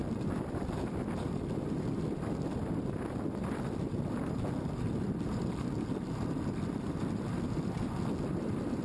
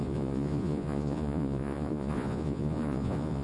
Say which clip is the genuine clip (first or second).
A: first